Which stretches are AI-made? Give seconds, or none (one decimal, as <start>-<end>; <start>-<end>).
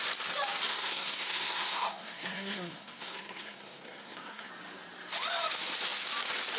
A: 0.7-4.5